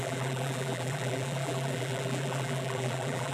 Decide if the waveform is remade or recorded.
remade